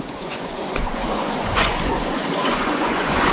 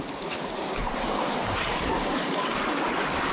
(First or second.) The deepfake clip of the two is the first